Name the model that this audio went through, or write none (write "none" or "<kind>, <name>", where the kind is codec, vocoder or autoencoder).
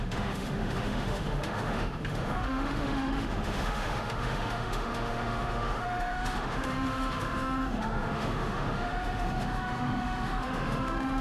autoencoder, DAC-VAE